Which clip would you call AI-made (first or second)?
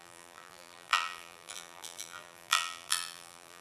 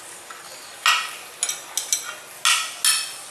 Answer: first